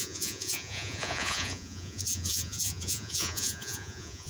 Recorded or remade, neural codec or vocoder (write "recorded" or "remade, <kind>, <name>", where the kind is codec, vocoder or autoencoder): remade, vocoder, Vocos